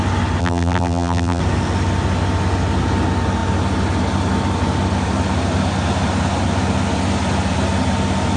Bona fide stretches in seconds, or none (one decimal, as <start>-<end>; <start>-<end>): 0.0-0.4; 1.4-8.4